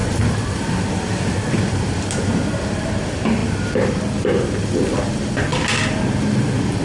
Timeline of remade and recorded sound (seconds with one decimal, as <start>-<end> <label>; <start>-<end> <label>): 0.0-6.8 recorded